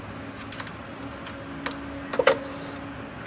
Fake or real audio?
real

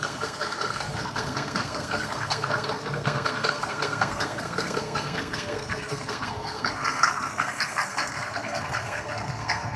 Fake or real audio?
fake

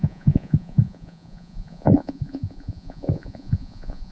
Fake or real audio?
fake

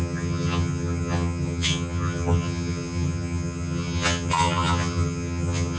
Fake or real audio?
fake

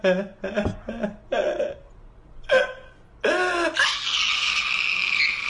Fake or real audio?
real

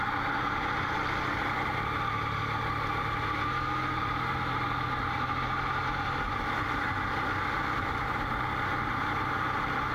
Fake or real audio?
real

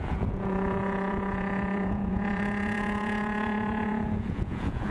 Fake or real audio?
fake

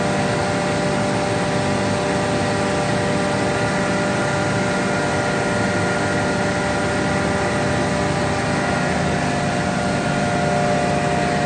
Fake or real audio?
real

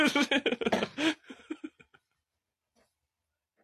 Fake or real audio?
real